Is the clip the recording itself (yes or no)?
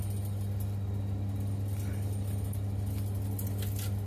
yes